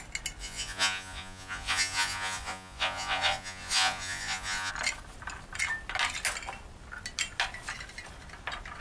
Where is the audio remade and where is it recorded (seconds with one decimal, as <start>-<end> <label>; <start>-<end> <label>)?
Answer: 0.0-0.4 recorded; 0.4-4.7 remade; 4.7-8.8 recorded